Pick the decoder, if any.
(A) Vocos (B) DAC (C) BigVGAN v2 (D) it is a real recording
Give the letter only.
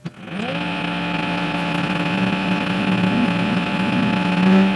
D